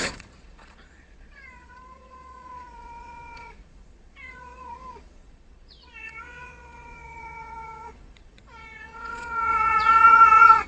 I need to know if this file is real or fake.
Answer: fake